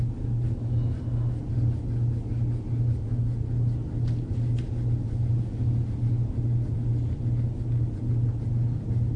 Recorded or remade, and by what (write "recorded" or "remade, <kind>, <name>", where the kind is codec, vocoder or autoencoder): recorded